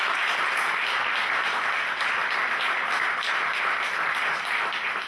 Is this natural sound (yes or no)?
yes